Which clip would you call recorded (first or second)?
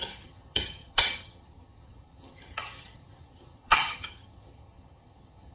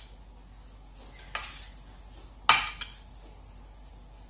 second